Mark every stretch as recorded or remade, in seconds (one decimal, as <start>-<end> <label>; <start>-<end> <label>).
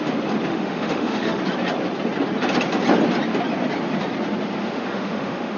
0.0-0.5 recorded; 0.5-1.4 remade; 1.4-4.6 recorded; 4.6-5.6 remade